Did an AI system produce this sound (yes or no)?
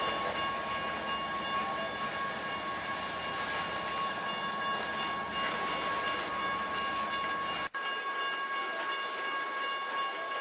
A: no